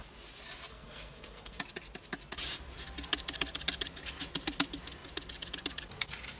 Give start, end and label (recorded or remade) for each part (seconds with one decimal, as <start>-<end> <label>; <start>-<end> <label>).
0.0-0.7 recorded; 0.7-1.6 remade; 1.6-6.4 recorded